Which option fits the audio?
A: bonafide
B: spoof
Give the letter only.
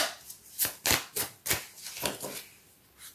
A